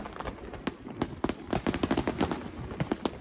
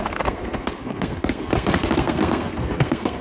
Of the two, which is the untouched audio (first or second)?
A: first